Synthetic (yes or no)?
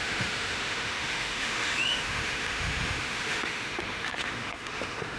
yes